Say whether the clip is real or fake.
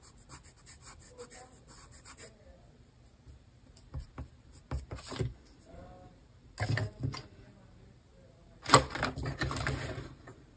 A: real